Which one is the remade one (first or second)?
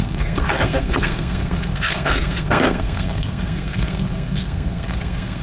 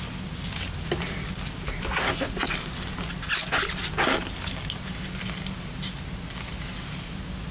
first